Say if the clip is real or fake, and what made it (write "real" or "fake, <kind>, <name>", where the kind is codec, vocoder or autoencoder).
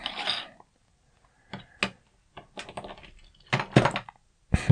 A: real